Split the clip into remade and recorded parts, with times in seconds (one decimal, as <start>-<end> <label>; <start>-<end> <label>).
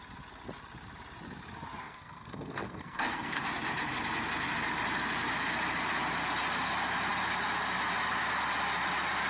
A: 0.0-1.8 recorded; 1.8-3.4 remade; 3.4-9.3 recorded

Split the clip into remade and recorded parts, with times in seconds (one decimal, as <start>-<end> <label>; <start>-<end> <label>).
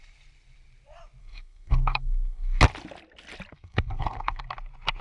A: 0.0-1.2 recorded; 1.2-2.6 remade; 2.6-3.5 recorded; 3.5-4.4 remade; 4.4-5.0 recorded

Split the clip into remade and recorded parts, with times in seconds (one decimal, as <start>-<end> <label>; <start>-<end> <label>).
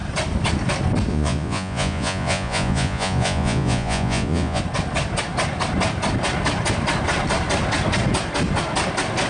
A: 0.0-1.1 recorded; 1.1-4.6 remade; 4.6-9.3 recorded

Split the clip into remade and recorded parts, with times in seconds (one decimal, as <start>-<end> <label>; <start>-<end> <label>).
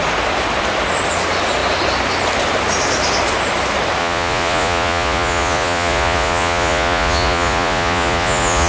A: 0.0-4.0 recorded; 4.0-8.7 remade